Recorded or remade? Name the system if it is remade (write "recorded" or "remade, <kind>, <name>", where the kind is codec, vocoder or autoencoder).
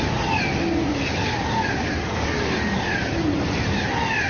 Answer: recorded